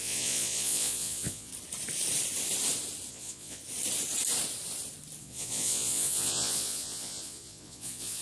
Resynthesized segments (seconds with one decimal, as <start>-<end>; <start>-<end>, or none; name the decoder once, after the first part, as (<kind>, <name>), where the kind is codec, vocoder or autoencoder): 0.0-1.5 (vocoder, Vocos); 3.1-3.6; 5.2-8.2